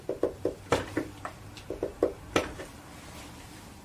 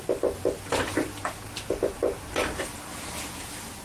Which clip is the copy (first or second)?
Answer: first